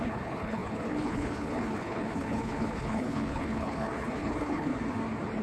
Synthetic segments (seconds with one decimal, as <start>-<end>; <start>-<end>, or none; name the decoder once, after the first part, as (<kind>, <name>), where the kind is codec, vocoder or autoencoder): 0.0-4.7 (codec, HILCodec)